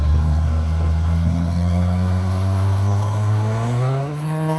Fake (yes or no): yes